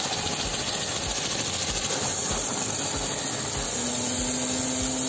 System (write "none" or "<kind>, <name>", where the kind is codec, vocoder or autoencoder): none